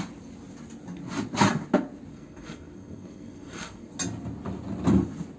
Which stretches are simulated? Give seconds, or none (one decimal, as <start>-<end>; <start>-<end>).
2.1-3.9